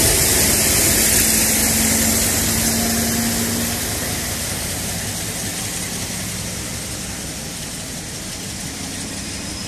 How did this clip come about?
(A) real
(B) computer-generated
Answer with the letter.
A